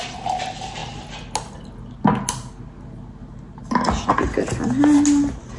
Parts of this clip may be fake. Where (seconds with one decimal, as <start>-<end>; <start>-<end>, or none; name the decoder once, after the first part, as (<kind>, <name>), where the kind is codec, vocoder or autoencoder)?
none